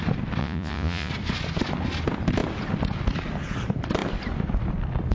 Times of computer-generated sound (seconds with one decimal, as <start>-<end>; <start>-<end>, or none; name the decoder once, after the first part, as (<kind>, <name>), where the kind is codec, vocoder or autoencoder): 0.4-1.1 (vocoder, Vocos)